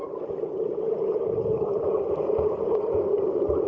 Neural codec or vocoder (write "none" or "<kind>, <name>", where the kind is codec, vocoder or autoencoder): vocoder, BigVGAN v2